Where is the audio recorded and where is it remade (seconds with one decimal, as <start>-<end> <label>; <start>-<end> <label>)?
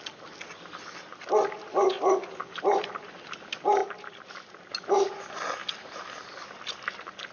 0.0-3.8 recorded; 3.8-4.7 remade; 4.7-7.3 recorded